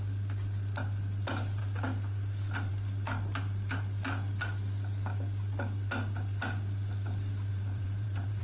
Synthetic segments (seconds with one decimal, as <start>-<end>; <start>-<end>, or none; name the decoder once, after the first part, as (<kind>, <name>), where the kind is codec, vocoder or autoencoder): 7.5-8.4 (vocoder, Vocos)